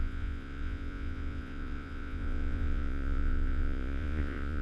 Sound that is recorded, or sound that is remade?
remade